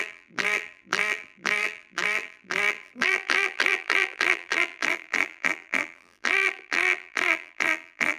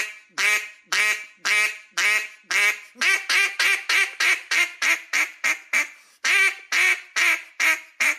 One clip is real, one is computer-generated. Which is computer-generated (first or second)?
first